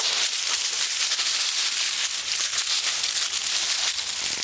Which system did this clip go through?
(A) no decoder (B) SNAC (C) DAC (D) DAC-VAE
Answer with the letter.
A